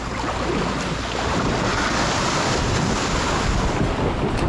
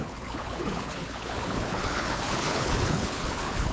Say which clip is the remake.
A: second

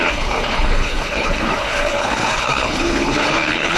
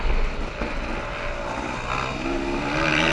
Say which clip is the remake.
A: first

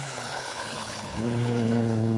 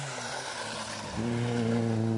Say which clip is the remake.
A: first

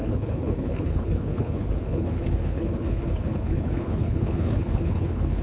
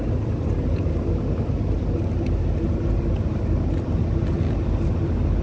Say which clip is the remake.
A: first